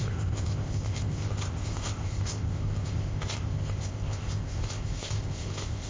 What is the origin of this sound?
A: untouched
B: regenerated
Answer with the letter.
B